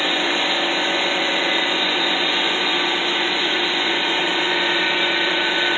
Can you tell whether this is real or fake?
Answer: fake